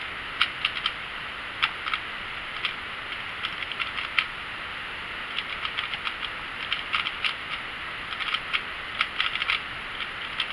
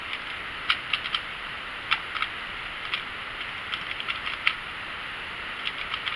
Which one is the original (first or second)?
first